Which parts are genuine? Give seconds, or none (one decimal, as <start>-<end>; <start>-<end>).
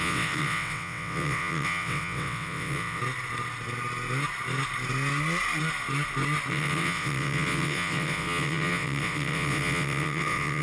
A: 3.0-6.5